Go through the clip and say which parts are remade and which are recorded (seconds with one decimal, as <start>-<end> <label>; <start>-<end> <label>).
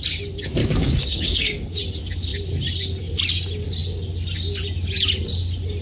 0.0-0.6 recorded; 0.6-1.8 remade; 1.8-5.8 recorded